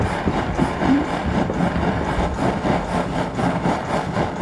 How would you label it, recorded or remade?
remade